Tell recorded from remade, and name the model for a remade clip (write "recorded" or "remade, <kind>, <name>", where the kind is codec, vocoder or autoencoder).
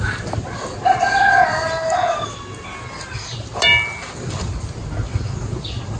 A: recorded